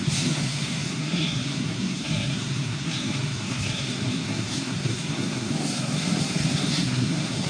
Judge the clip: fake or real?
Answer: fake